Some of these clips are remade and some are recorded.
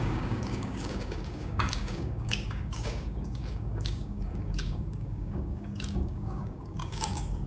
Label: remade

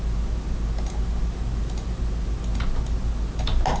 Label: recorded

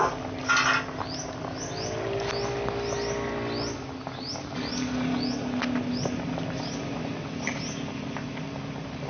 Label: recorded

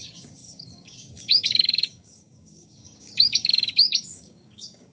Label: remade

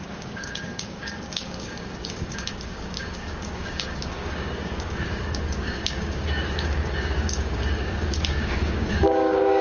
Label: remade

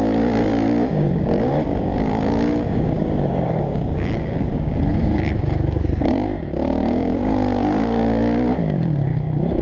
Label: remade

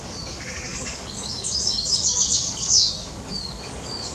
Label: remade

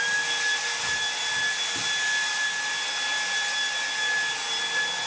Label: recorded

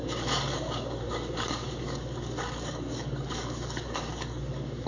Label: remade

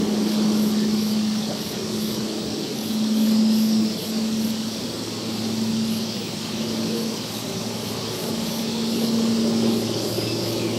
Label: remade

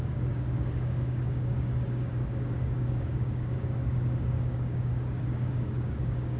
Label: remade